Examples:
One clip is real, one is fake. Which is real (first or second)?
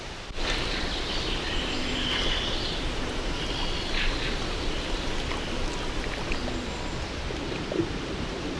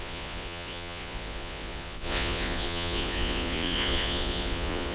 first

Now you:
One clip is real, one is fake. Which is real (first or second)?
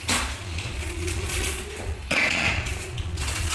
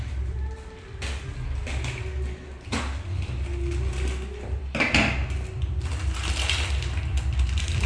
second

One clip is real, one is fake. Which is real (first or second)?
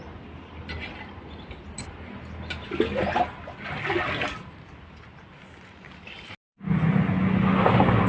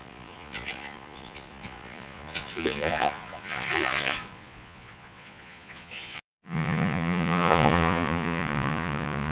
first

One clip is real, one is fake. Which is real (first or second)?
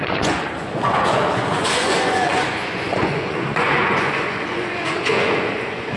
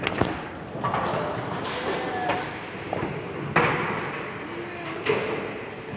second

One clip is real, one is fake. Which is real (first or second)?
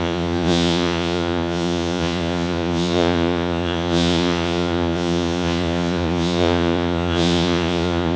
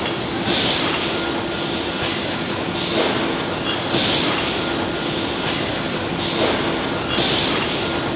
second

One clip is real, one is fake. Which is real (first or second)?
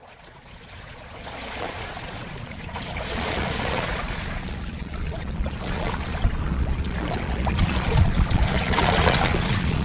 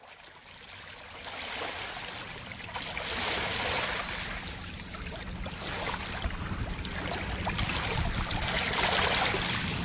second